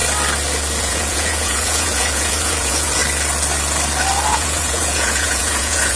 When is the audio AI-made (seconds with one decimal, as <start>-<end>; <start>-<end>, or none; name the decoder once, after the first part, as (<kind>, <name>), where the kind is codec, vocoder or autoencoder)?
0.8-3.0 (vocoder, Vocos); 4.3-6.0